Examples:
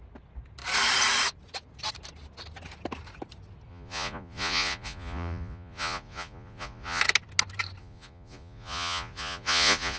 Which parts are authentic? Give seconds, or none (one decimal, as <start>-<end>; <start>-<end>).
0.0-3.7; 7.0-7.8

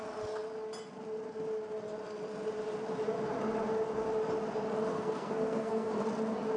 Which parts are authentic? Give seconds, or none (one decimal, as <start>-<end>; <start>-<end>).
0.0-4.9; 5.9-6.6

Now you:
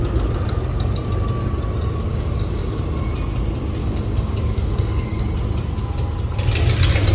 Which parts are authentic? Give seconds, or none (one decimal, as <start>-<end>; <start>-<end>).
0.0-2.1; 2.8-3.8; 5.2-7.1

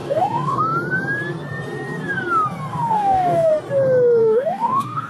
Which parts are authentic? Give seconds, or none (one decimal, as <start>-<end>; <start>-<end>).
0.6-2.7; 3.5-4.2

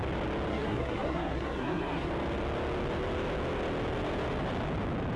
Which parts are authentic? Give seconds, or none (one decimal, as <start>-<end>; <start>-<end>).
0.0-0.5; 2.1-5.2